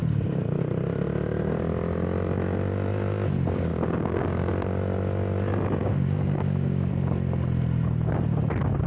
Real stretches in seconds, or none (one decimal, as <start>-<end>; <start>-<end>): 0.0-3.7; 4.5-5.8; 6.9-8.9